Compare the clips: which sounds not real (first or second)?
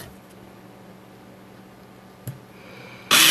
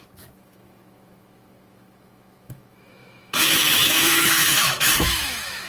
second